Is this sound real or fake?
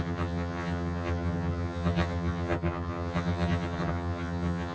fake